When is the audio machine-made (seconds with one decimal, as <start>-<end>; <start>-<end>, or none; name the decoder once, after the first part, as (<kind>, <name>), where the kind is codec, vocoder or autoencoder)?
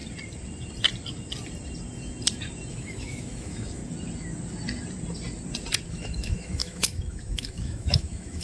2.7-3.8 (autoencoder, DAC-VAE); 5.9-8.4